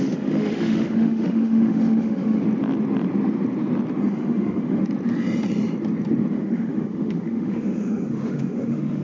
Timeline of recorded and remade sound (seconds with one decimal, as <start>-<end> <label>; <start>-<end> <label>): 0.0-2.4 remade; 2.4-4.1 recorded; 4.1-4.8 remade; 4.8-6.3 recorded; 6.3-9.0 remade